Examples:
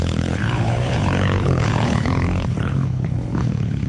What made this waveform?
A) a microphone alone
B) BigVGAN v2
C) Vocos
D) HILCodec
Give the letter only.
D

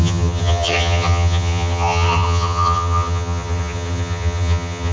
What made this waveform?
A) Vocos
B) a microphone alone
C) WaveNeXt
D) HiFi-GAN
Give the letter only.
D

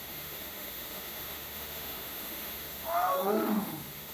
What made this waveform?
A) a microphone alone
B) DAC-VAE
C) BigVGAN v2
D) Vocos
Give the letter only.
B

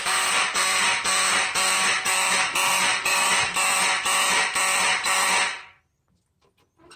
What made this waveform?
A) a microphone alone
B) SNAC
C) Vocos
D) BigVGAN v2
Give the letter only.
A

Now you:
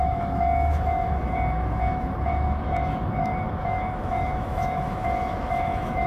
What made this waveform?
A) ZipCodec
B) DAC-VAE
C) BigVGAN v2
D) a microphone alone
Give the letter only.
B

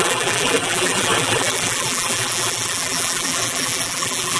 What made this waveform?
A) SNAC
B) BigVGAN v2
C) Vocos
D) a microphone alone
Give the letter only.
B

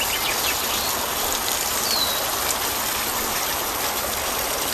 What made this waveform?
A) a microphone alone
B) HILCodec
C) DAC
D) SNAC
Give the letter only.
A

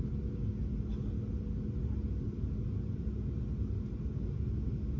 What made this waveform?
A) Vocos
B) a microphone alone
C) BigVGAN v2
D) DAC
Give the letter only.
B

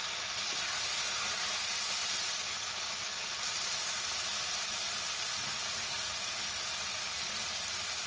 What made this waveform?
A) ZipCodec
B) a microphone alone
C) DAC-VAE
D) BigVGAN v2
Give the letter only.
B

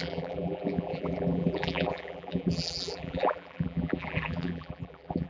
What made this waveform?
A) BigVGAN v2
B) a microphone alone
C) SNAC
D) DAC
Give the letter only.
A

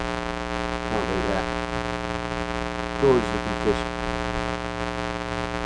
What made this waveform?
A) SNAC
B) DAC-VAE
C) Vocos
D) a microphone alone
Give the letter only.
D